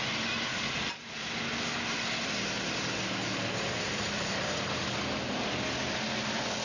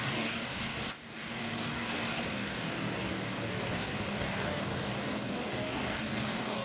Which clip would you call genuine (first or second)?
first